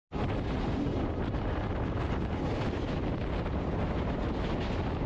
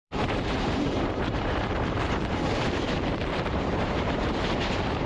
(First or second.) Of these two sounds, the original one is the first